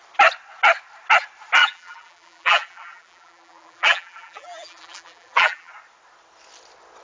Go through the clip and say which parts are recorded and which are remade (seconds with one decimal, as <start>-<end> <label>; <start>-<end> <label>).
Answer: 0.0-1.6 recorded; 1.6-5.7 remade; 5.7-7.0 recorded